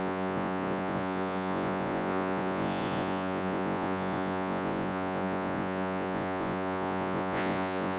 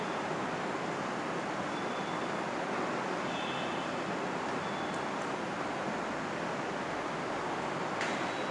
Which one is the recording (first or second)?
second